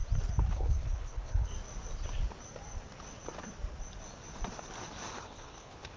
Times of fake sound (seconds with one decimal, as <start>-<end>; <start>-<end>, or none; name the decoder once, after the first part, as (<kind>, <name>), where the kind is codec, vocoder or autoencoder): 0.5-1.5 (codec, HILCodec); 5.1-6.0